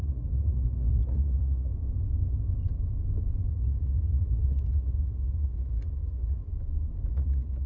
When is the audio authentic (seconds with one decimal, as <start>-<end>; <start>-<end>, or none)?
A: 1.7-3.5; 6.5-7.1